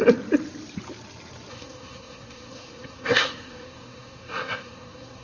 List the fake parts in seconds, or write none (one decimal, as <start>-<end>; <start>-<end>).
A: 1.5-5.2